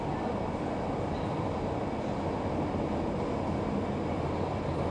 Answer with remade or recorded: recorded